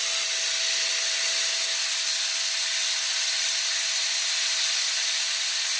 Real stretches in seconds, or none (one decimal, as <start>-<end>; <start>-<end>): 0.0-5.8